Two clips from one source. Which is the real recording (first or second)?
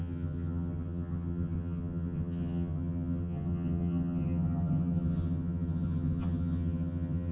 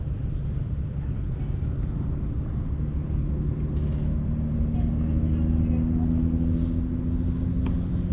second